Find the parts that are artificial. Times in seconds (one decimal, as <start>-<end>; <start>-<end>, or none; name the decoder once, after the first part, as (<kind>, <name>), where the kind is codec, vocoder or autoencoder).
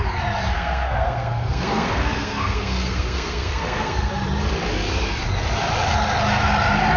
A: 0.5-4.1 (codec, SNAC)